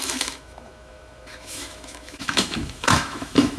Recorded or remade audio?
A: remade